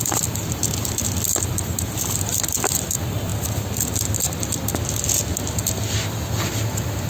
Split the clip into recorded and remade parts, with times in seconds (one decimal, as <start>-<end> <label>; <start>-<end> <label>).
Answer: 0.0-3.3 remade; 3.3-5.7 recorded; 5.7-7.1 remade